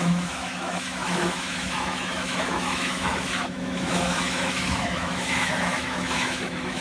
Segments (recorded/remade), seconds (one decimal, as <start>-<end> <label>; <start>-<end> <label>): 0.0-6.8 remade